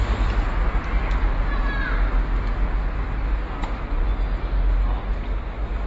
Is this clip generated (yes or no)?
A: no